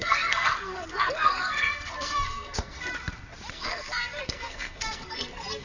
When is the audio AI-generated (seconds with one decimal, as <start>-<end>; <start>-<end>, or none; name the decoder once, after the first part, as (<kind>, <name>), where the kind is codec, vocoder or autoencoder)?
0.0-2.9 (codec, SNAC); 3.5-5.6